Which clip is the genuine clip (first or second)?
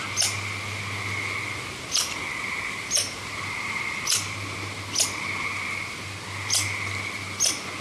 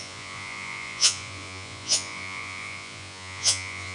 first